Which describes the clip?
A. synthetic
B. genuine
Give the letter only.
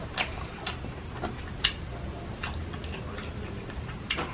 B